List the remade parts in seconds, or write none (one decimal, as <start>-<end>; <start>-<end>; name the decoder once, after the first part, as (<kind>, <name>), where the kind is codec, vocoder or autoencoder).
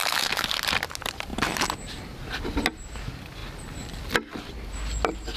0.0-0.5 (autoencoder, DAC-VAE)